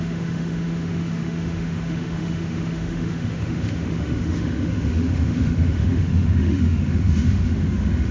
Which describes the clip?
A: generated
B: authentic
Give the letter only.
A